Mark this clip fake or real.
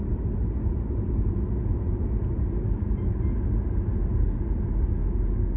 real